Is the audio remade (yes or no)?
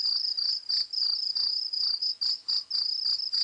no